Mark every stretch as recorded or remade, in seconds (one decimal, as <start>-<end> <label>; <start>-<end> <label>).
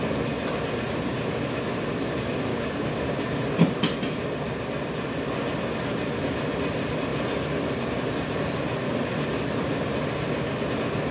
0.0-2.5 recorded; 2.5-3.1 remade; 3.1-11.1 recorded